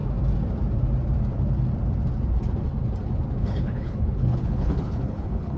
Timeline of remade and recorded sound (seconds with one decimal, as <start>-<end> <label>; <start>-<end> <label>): 0.0-3.4 recorded; 3.4-5.6 remade

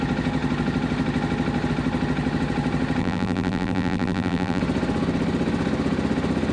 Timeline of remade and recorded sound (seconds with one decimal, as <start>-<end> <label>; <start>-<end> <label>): 0.0-3.0 recorded; 3.0-4.6 remade; 4.6-6.5 recorded

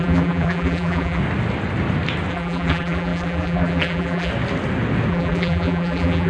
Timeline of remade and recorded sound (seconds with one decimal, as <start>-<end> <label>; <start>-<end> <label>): 0.0-1.2 remade; 1.2-2.3 recorded; 2.3-4.3 remade; 4.3-5.1 recorded; 5.1-6.3 remade

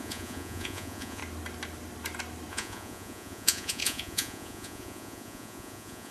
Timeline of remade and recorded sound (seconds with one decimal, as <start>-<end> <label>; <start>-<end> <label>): 0.0-1.2 remade; 1.2-2.5 recorded; 2.5-6.1 remade